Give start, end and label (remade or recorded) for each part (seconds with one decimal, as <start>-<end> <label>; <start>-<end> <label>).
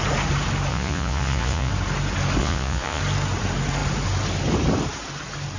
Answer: 0.0-0.7 recorded; 0.7-1.7 remade; 1.7-2.4 recorded; 2.4-3.0 remade; 3.0-5.6 recorded